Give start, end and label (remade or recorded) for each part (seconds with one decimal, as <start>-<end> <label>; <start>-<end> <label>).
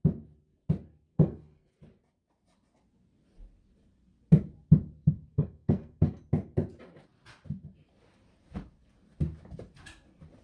0.0-1.1 recorded; 1.1-1.7 remade; 1.7-5.3 recorded; 5.3-6.2 remade; 6.2-10.4 recorded